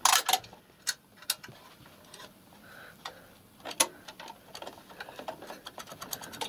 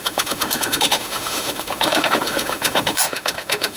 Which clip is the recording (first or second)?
first